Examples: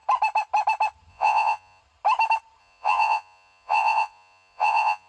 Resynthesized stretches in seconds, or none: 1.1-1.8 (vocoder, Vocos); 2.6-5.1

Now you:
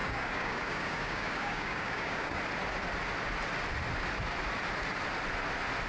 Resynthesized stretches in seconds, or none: 0.0-2.4 (codec, DAC)

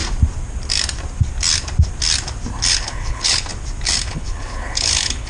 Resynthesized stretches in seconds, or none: 2.7-3.5 (codec, HILCodec); 4.0-5.3

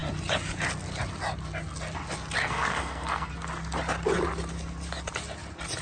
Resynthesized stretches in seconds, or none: 2.4-3.3 (codec, SNAC)

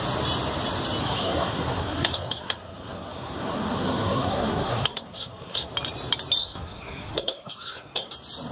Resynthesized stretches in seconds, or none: 1.0-5.7 (codec, SNAC); 6.4-8.1

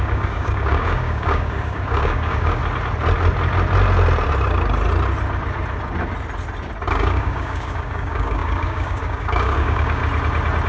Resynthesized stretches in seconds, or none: 0.0-2.6 (codec, DAC); 6.9-10.0

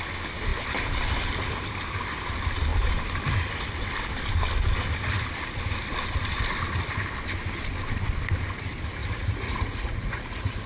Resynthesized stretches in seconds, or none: 9.0-10.7 (vocoder, Vocos)

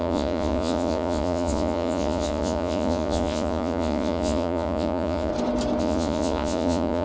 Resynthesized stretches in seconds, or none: 0.0-5.3 (vocoder, Vocos); 5.8-7.0